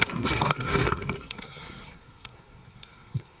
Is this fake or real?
fake